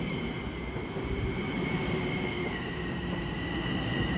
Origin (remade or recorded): remade